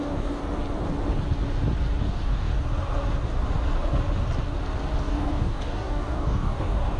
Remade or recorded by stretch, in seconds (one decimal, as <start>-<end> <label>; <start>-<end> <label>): 0.0-0.4 remade; 0.4-2.0 recorded; 2.0-2.5 remade; 2.5-5.0 recorded; 5.0-7.0 remade

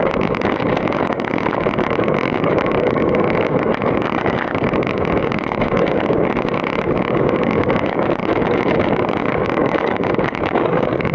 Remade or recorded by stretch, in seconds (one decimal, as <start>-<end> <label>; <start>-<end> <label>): 0.0-11.1 remade

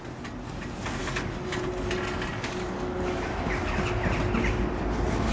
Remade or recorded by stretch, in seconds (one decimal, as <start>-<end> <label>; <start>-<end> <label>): 0.0-1.0 recorded; 1.0-1.9 remade; 1.9-2.3 recorded; 2.3-3.8 remade; 3.8-5.3 recorded